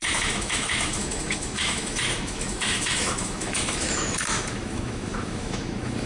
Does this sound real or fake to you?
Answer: fake